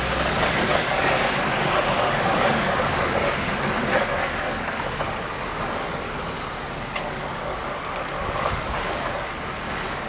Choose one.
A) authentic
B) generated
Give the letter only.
B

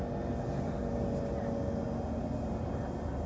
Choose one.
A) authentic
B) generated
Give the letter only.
A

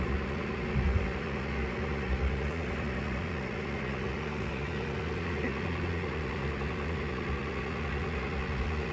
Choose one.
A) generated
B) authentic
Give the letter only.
A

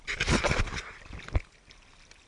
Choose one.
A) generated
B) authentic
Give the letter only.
B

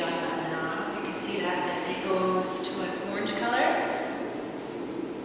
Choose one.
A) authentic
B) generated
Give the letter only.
A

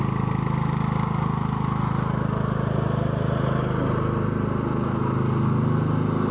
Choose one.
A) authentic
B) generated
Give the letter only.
A